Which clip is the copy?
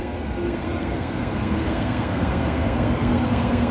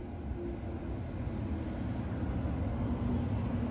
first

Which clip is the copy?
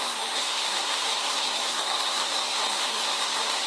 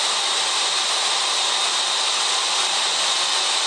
first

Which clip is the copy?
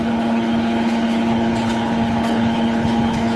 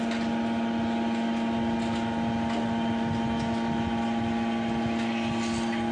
first